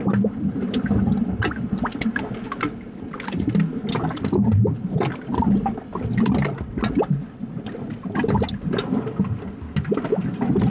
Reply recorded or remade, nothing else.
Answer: recorded